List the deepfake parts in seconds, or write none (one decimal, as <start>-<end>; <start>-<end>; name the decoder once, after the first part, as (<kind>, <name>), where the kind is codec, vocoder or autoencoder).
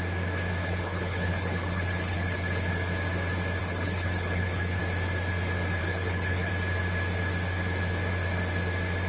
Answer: 0.6-2.7 (codec, HILCodec); 3.6-4.8; 5.8-6.5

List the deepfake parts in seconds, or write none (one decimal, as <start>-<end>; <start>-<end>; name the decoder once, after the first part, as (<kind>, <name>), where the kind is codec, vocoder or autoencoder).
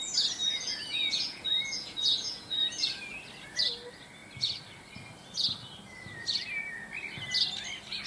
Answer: 0.4-2.8 (vocoder, Vocos)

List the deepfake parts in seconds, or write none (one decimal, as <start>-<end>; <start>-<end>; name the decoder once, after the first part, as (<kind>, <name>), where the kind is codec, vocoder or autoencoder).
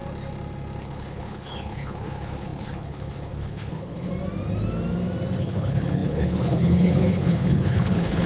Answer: 0.8-4.1 (codec, HILCodec); 5.4-8.3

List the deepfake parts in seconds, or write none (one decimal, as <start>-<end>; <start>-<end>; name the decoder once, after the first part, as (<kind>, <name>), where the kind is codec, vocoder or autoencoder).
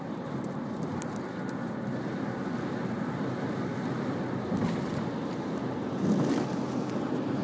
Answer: none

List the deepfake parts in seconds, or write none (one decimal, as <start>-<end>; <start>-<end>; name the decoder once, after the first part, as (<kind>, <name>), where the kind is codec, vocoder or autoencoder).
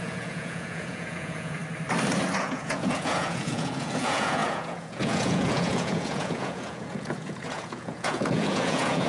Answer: 0.0-1.6 (vocoder, Vocos); 2.4-9.1